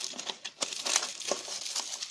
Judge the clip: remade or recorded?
recorded